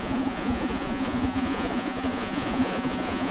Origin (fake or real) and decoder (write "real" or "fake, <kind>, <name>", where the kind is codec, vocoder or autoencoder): fake, vocoder, Vocos